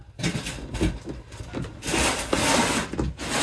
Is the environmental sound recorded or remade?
recorded